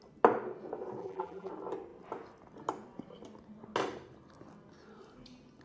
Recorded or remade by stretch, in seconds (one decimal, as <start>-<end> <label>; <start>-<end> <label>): 0.0-1.0 recorded; 1.0-1.5 remade; 1.5-5.6 recorded